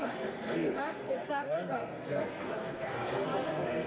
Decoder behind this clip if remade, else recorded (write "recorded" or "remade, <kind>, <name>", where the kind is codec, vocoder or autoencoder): remade, codec, SNAC